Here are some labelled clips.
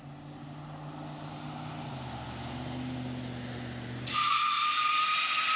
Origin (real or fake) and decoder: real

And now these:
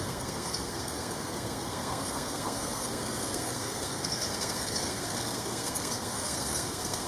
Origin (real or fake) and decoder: fake, codec, SNAC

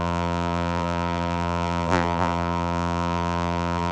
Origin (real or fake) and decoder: fake, vocoder, BigVGAN v2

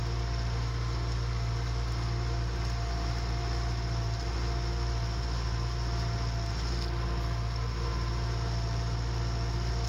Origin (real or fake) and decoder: real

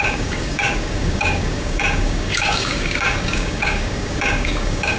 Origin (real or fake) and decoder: fake, codec, DAC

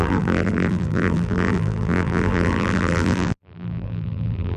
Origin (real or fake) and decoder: fake, vocoder, BigVGAN v2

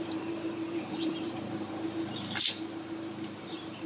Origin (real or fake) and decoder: fake, vocoder, BigVGAN v2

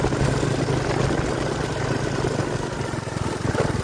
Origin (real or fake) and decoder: real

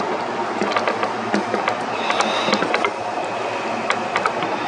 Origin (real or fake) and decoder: real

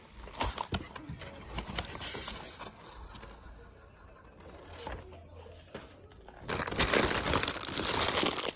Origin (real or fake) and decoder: real